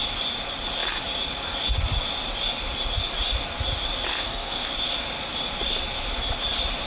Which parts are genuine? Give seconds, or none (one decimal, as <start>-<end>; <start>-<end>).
0.0-4.1; 4.7-6.9